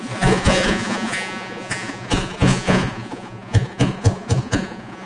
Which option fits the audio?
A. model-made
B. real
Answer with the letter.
A